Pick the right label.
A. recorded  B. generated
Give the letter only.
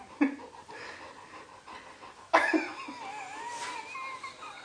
A